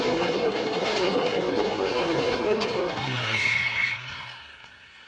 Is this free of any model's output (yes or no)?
no